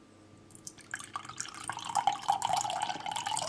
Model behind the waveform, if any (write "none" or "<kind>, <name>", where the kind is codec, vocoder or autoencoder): none